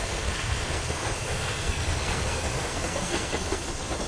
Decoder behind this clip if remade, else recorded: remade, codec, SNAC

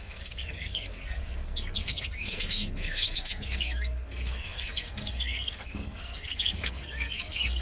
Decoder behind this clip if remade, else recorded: remade, codec, SNAC